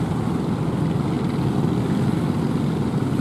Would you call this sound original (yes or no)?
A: yes